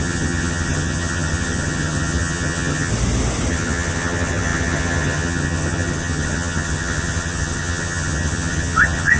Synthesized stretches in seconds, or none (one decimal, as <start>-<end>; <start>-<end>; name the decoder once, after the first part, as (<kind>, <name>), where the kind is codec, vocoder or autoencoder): 0.0-2.9 (vocoder, HiFi-GAN); 3.5-9.2